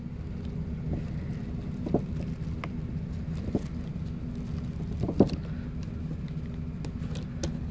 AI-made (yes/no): no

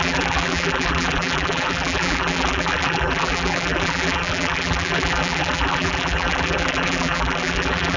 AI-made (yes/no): yes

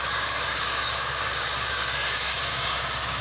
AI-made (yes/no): yes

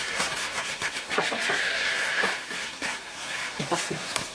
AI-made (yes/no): yes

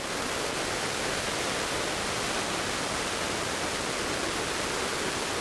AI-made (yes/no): no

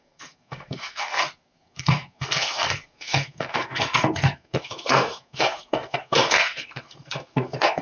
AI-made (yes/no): yes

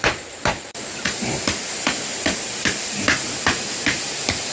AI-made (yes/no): yes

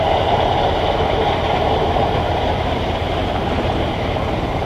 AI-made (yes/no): yes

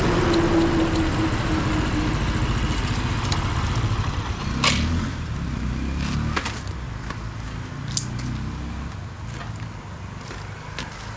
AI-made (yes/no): no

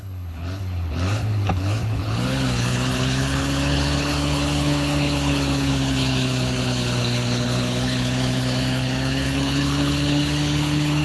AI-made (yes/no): yes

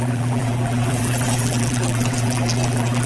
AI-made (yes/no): yes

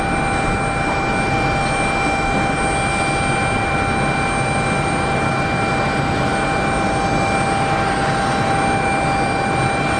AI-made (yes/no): no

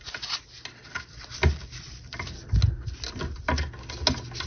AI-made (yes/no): no